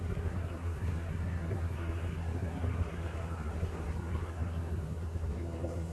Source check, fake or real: fake